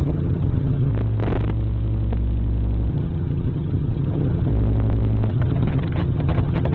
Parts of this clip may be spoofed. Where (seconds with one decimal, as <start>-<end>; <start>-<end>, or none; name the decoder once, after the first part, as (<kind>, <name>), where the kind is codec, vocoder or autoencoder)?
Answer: 0.0-0.9 (vocoder, HiFi-GAN); 2.9-4.5; 5.3-6.7